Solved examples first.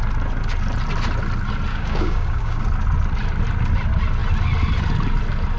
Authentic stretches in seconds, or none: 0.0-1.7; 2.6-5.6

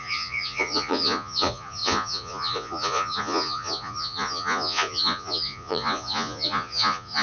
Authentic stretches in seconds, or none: none